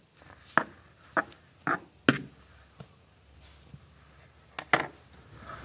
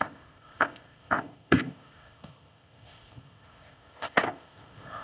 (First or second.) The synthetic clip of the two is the second